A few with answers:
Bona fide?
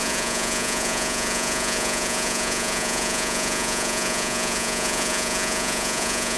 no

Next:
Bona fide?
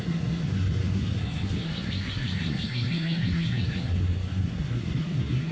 no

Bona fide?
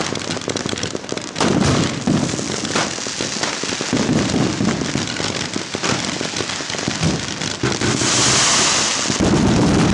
yes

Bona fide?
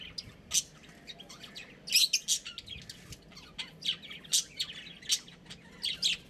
yes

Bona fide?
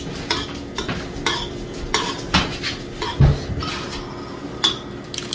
yes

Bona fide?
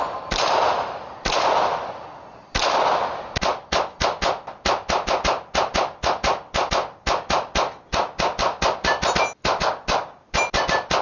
yes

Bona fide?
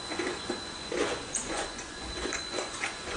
no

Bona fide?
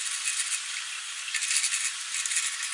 yes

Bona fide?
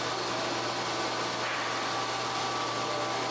yes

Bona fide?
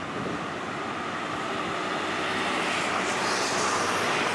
yes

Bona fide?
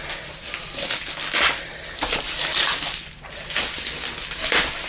yes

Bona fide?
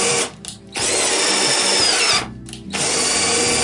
yes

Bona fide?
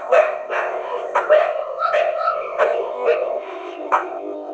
no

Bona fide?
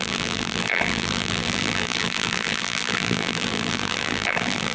no